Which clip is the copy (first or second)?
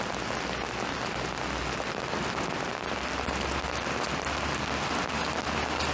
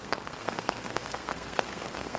second